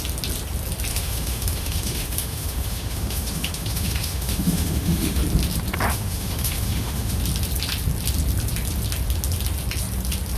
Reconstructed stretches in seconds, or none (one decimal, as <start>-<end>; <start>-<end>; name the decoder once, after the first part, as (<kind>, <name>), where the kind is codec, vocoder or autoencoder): 0.9-5.2 (autoencoder, DAC-VAE); 5.9-7.2